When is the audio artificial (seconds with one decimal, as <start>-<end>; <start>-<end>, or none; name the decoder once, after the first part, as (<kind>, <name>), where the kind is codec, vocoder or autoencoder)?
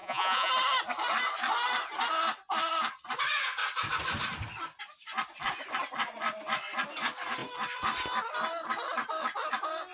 0.0-0.5 (vocoder, Vocos)